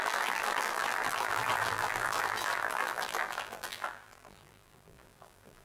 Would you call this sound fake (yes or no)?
yes